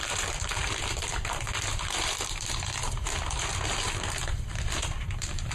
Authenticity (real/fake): fake